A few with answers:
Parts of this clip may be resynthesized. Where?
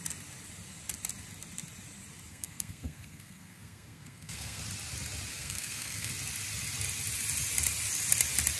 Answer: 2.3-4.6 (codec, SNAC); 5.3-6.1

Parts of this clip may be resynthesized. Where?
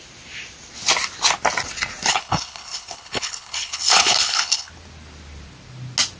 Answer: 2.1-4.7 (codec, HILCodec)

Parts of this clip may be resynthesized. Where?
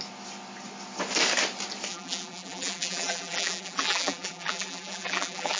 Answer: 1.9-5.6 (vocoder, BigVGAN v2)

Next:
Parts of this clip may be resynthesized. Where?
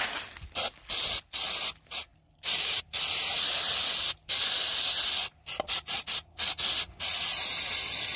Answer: none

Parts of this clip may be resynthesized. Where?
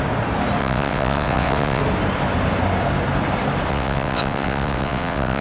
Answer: 0.6-1.8 (vocoder, WaveNeXt); 3.7-5.4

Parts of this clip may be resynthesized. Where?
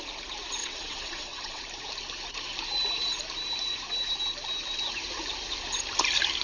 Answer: 0.6-1.6 (vocoder, WaveNeXt)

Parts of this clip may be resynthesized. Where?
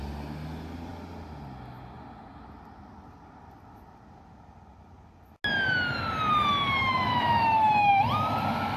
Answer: 6.8-7.9 (autoencoder, DAC-VAE)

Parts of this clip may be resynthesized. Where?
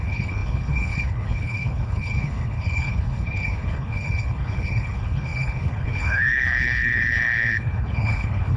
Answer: 0.0-8.6 (codec, HILCodec)